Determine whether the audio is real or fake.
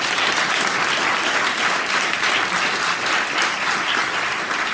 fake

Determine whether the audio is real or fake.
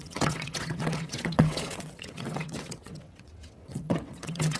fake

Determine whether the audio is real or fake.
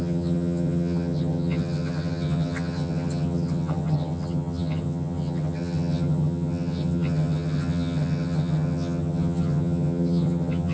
fake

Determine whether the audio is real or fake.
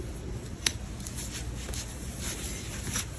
real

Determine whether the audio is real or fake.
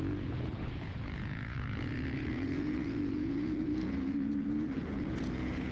fake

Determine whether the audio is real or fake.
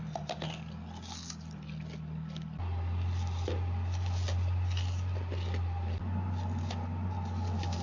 real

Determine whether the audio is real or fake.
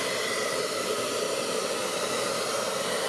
real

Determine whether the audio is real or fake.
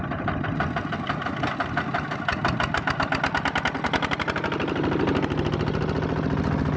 real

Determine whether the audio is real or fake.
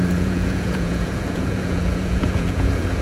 fake